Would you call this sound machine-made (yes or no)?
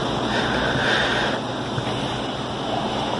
no